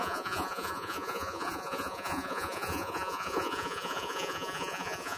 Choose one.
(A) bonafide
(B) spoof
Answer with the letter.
B